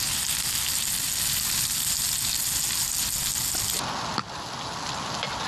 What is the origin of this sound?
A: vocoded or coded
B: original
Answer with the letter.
B